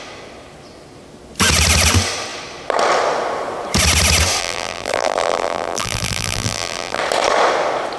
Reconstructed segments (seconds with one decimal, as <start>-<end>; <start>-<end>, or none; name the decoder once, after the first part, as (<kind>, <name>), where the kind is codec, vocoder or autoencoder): 4.4-7.0 (vocoder, BigVGAN v2)